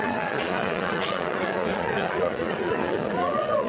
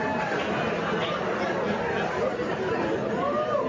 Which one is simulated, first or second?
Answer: first